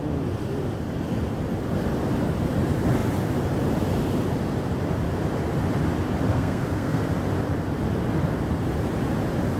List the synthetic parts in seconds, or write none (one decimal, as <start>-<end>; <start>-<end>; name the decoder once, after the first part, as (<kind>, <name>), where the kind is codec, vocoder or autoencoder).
6.3-7.0 (codec, SNAC)